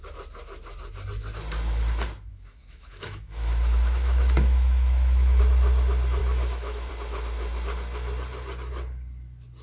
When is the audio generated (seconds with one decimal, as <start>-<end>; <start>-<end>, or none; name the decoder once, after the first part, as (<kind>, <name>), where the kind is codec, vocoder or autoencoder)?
2.3-5.4 (autoencoder, DAC-VAE); 6.2-6.9